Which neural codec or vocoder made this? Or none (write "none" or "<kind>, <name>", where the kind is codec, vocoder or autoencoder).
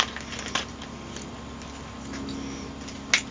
none